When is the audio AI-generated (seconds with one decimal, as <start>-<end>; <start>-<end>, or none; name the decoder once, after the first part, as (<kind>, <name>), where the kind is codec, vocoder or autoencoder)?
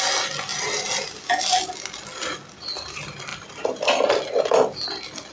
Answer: none